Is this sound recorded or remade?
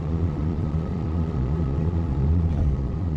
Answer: remade